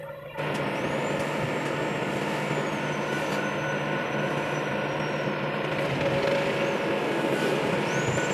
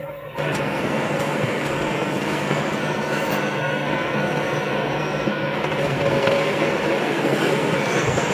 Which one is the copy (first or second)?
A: second